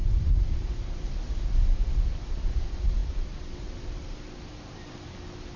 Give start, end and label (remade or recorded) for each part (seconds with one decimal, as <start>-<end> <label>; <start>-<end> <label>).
0.0-5.6 recorded